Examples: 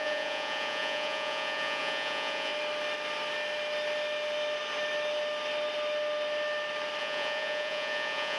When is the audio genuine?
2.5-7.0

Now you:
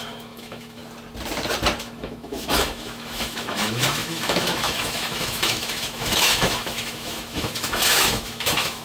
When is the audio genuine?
0.8-1.8

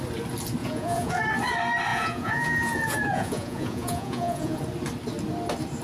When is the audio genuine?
0.0-0.6; 1.2-1.9; 4.6-5.8

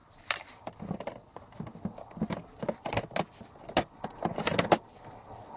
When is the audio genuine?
0.7-5.6